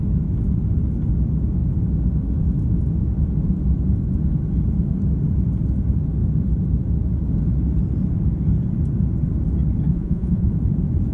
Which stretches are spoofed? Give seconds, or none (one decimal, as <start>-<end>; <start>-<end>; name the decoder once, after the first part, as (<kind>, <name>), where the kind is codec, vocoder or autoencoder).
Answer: 9.9-10.5 (vocoder, Vocos)